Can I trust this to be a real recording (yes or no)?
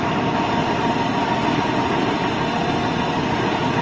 yes